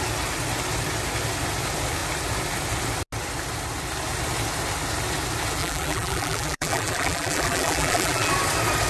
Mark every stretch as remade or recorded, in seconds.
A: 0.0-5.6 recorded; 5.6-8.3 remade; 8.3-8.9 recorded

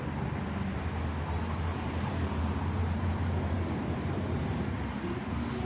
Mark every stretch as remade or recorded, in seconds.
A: 0.0-1.7 recorded; 1.7-5.1 remade; 5.1-5.6 recorded

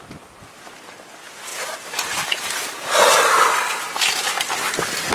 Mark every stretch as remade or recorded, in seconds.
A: 0.0-1.5 recorded; 1.5-4.3 remade; 4.3-5.1 recorded

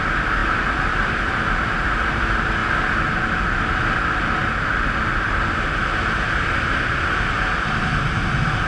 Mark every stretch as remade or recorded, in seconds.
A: 0.0-0.4 recorded; 0.4-2.2 remade; 2.2-8.7 recorded